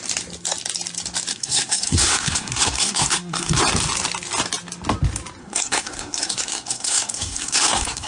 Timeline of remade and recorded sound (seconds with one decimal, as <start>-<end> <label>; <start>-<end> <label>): 0.0-1.3 recorded; 1.3-3.6 remade; 3.6-5.4 recorded; 5.4-8.1 remade